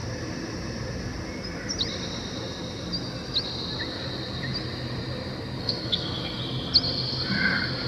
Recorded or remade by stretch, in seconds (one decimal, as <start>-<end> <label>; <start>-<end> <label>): 0.0-5.6 recorded; 5.6-6.4 remade; 6.4-7.9 recorded